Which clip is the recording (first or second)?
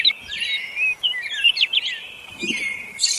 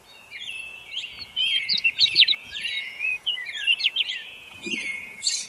first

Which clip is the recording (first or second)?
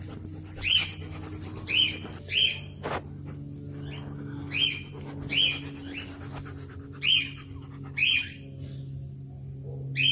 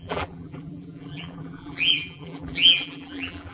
first